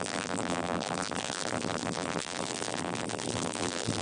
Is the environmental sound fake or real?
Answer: fake